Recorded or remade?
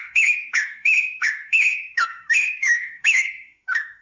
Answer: remade